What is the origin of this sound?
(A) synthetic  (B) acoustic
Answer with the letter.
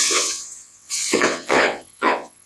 A